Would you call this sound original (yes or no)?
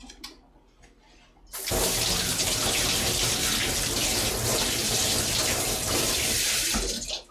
yes